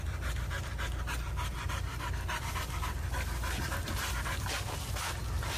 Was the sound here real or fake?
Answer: real